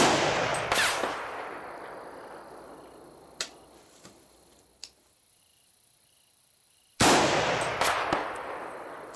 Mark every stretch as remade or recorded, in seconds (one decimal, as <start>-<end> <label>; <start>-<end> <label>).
0.0-9.2 remade